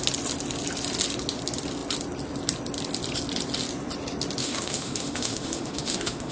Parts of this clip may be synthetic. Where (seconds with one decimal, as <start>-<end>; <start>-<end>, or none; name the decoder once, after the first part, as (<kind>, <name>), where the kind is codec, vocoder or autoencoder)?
4.4-6.3 (autoencoder, DAC-VAE)